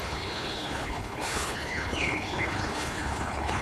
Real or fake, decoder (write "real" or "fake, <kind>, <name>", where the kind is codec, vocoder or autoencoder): fake, codec, HILCodec